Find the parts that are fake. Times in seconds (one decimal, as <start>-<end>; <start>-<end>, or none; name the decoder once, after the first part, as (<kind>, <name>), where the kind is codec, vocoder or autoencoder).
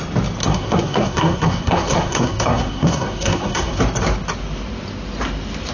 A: 0.4-3.8 (codec, SNAC)